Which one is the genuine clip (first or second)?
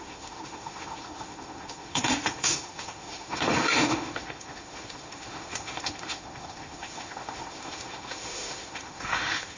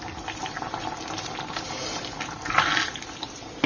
second